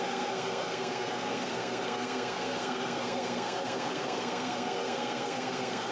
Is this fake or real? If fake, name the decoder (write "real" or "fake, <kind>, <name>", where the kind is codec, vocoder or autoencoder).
fake, codec, SNAC